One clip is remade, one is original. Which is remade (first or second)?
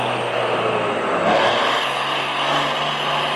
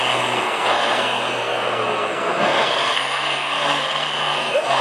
second